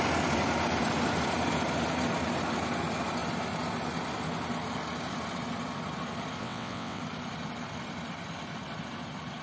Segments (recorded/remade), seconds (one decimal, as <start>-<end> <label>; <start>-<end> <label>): 0.0-6.4 recorded; 6.4-7.0 remade; 7.0-9.4 recorded